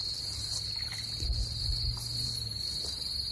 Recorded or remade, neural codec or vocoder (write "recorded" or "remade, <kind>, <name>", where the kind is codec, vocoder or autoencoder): recorded